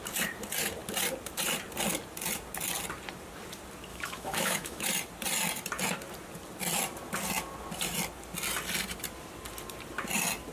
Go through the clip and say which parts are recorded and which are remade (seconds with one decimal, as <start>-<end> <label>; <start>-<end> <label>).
0.0-3.9 recorded; 3.9-4.9 remade; 4.9-10.5 recorded